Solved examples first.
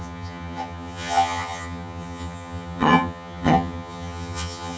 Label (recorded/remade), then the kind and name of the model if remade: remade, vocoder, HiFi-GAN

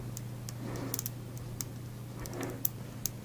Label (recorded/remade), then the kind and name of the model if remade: recorded